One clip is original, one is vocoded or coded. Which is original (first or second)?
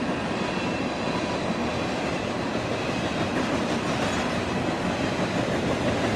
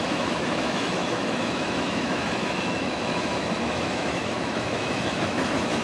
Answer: first